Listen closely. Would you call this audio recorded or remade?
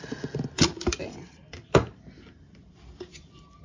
remade